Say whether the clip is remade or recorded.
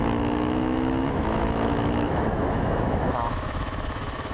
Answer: remade